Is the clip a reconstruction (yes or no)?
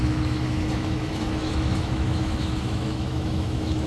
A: yes